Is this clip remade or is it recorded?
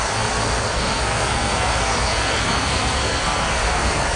remade